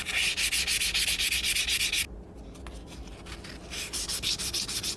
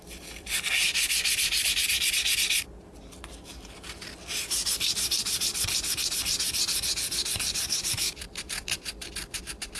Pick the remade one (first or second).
second